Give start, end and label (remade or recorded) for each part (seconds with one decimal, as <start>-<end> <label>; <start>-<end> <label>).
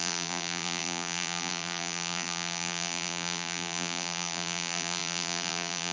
0.0-5.9 remade